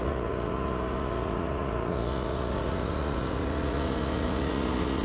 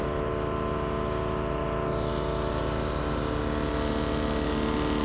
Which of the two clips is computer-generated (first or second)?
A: first